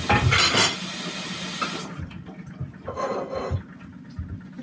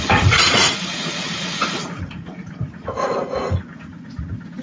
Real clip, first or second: first